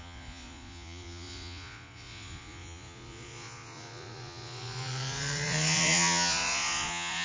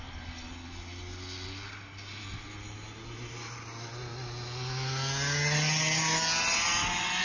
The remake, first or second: first